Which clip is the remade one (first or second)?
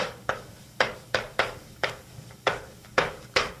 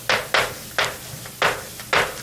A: first